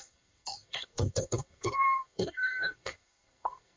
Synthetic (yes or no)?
yes